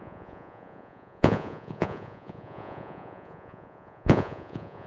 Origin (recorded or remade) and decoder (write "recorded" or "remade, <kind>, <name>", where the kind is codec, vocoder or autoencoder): remade, vocoder, Vocos